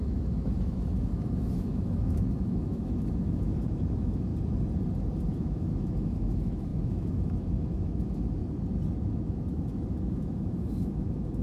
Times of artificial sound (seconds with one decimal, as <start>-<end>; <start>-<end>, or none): 0.0-4.3; 5.4-8.4; 9.0-11.4